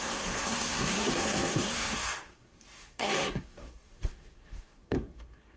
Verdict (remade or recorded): remade